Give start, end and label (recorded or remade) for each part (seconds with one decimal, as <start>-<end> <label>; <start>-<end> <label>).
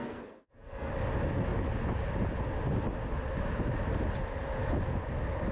0.0-0.9 remade; 0.9-5.5 recorded